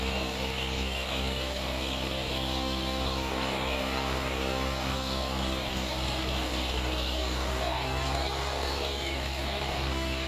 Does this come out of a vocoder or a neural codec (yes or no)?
yes